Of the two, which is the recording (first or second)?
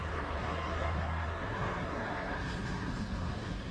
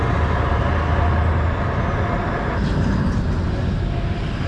second